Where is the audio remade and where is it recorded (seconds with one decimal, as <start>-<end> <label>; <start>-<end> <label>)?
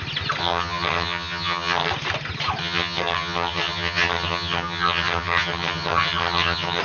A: 0.0-0.4 recorded; 0.4-1.9 remade; 1.9-2.6 recorded; 2.6-6.8 remade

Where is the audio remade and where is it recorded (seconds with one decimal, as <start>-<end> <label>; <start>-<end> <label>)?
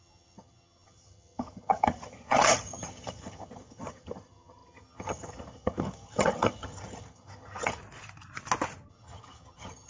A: 0.0-7.8 remade; 7.8-8.9 recorded; 8.9-9.9 remade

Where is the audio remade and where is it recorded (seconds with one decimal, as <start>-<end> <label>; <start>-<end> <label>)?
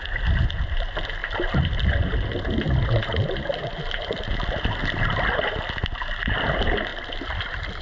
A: 0.0-7.8 recorded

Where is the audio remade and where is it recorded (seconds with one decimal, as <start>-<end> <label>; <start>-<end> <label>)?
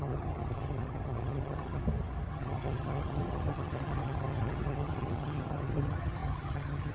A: 0.0-1.8 remade; 1.8-2.3 recorded; 2.3-6.9 remade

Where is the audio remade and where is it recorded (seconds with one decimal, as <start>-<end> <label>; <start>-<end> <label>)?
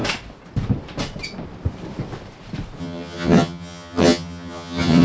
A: 0.0-2.8 recorded; 2.8-5.0 remade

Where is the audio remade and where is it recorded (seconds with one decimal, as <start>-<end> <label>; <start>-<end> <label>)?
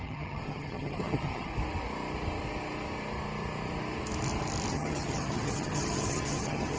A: 0.0-1.5 remade; 1.5-4.7 recorded; 4.7-6.8 remade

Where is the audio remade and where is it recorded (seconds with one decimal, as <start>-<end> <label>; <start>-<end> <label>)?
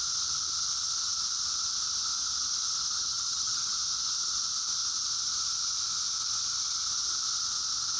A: 0.0-3.0 recorded; 3.0-3.7 remade; 3.7-8.0 recorded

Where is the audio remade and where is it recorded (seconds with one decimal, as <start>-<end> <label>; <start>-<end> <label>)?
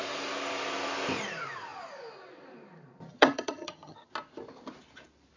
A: 0.0-3.1 recorded; 3.1-4.1 remade; 4.1-5.4 recorded